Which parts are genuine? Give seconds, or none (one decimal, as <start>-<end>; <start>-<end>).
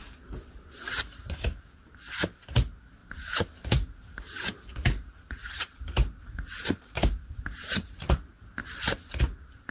0.0-3.0; 8.1-8.6; 9.2-9.7